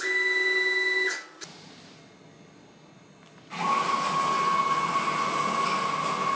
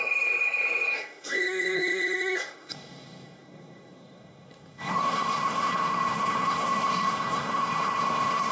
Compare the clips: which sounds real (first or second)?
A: first